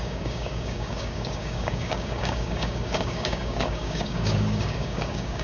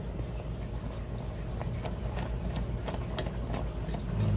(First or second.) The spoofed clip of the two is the first